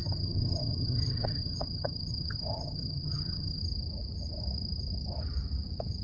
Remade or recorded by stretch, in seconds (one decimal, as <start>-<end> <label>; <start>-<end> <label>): 0.0-3.6 remade; 3.6-6.0 recorded